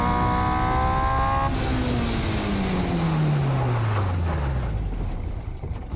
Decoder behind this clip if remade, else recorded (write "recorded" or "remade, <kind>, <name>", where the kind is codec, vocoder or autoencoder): recorded